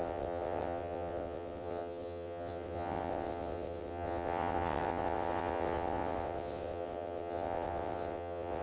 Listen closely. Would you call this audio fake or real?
fake